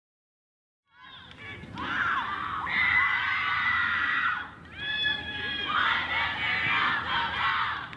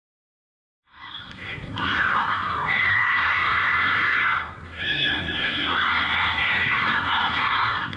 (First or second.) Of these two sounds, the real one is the first